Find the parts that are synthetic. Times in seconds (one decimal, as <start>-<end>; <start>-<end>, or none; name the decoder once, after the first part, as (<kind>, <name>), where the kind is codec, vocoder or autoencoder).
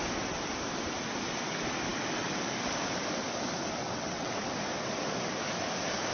3.8-4.3 (vocoder, WaveNeXt)